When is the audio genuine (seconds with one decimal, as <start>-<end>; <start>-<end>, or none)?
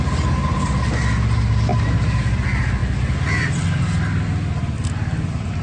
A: 0.0-5.6